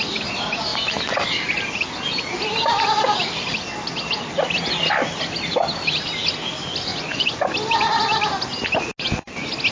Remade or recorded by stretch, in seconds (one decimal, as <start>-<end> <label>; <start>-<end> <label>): 0.0-6.9 recorded; 6.9-7.4 remade; 7.4-9.7 recorded